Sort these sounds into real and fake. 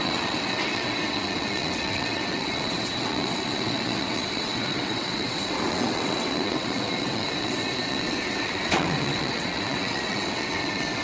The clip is fake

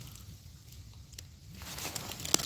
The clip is real